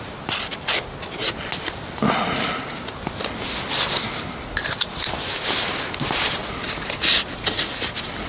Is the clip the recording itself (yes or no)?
yes